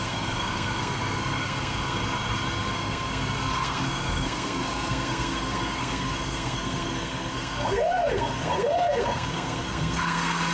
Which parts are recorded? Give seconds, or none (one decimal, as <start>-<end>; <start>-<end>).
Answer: 2.0-2.6